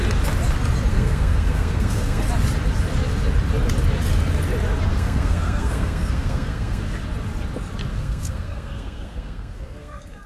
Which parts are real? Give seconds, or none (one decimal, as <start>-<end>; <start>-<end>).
0.0-0.9; 2.2-4.9; 6.8-7.9